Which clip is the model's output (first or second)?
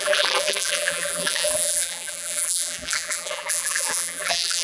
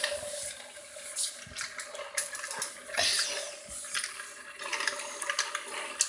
first